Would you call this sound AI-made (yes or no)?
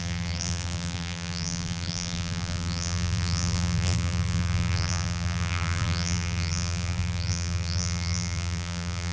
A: yes